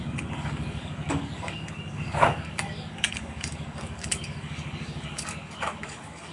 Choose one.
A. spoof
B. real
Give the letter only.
A